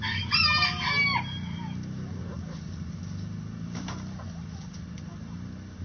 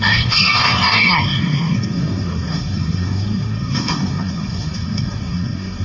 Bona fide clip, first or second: first